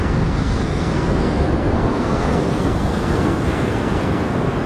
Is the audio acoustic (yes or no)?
no